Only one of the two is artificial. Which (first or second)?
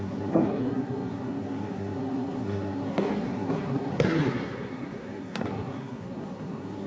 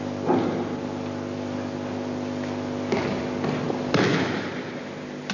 first